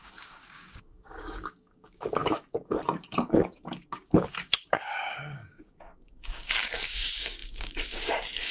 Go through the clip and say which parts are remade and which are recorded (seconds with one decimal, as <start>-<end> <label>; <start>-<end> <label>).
0.0-8.5 remade